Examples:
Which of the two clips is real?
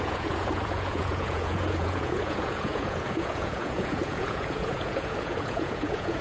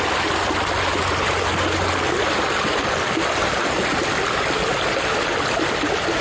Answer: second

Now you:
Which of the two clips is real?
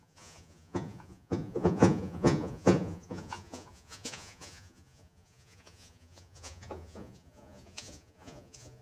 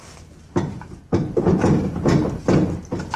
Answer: second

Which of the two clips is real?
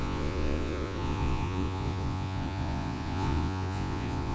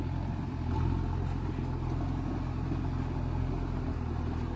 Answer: second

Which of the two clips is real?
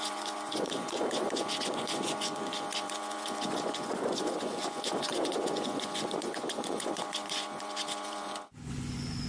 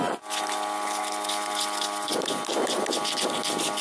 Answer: second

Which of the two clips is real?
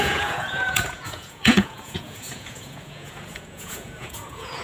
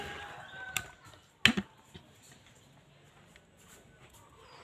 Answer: second